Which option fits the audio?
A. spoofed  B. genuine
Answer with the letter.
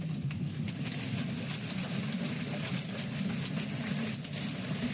B